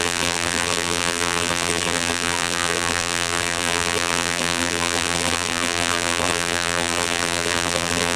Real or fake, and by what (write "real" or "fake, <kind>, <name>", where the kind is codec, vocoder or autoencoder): fake, vocoder, BigVGAN v2